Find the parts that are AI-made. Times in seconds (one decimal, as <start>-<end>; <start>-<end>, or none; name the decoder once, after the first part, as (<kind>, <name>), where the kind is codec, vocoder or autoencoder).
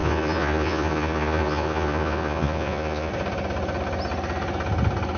0.0-3.1 (vocoder, Vocos)